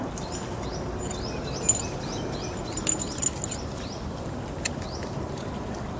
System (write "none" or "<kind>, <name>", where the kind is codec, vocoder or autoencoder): none